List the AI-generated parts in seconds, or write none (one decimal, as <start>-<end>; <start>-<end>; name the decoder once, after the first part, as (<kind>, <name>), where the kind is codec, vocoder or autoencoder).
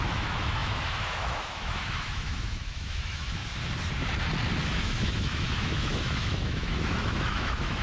0.0-3.4 (autoencoder, DAC-VAE); 4.7-7.8